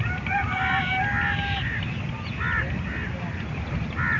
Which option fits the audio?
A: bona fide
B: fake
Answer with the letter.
A